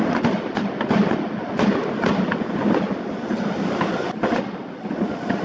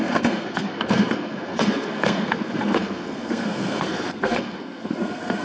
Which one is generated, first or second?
second